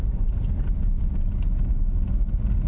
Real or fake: real